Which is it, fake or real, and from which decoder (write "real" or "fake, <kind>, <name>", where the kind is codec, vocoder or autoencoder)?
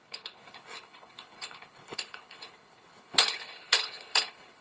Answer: fake, codec, HILCodec